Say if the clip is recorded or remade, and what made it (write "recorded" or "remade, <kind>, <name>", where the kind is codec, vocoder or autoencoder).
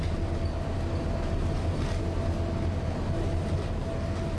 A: recorded